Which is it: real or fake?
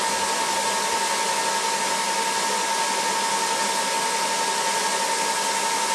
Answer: real